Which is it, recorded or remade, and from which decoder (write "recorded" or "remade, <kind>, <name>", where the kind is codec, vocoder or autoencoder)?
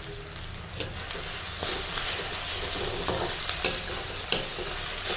recorded